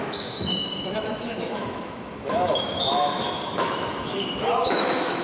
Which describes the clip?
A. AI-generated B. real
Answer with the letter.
A